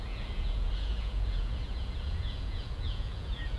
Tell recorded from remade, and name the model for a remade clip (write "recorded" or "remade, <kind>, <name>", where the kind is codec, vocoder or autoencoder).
remade, vocoder, Vocos